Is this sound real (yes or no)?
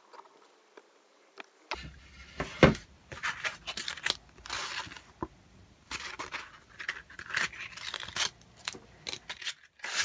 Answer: yes